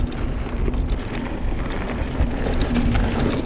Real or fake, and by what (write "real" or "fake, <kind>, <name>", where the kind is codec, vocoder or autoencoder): real